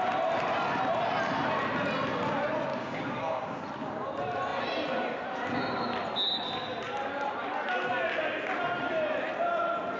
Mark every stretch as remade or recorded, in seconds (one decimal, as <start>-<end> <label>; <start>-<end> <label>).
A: 0.0-2.7 recorded; 2.7-3.6 remade; 3.6-10.0 recorded